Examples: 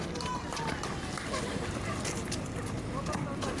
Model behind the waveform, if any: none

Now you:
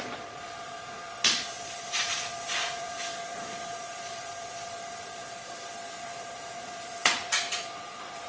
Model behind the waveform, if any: vocoder, Vocos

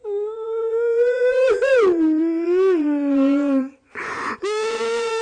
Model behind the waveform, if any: vocoder, Vocos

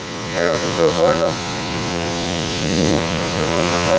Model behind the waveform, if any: vocoder, Vocos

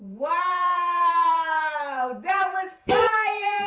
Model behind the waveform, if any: vocoder, Vocos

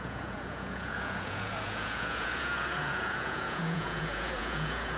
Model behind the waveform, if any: vocoder, Vocos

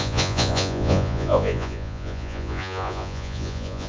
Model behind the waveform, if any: vocoder, Vocos